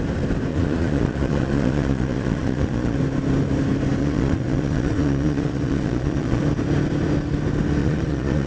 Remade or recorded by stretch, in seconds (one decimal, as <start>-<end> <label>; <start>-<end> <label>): 0.0-0.5 recorded; 0.5-3.0 remade; 3.0-4.0 recorded; 4.0-6.4 remade; 6.4-7.8 recorded; 7.8-8.5 remade